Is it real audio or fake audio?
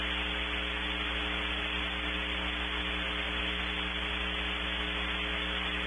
real